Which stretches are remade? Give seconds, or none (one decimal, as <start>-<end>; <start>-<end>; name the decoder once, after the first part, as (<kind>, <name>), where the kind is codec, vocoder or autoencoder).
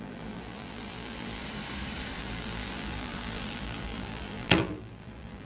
0.0-1.4 (vocoder, BigVGAN v2); 2.2-5.5